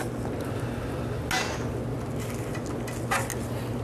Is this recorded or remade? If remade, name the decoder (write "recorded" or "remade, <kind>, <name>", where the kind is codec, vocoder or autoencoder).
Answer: recorded